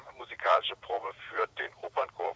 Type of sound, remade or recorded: remade